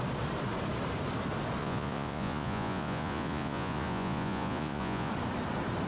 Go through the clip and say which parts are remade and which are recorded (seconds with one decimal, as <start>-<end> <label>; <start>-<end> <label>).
0.0-1.6 recorded; 1.6-5.1 remade; 5.1-5.9 recorded